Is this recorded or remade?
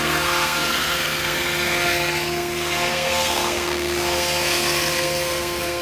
remade